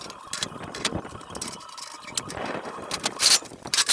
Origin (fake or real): real